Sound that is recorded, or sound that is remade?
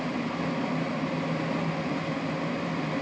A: recorded